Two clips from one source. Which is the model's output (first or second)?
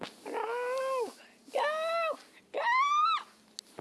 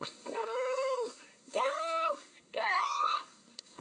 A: second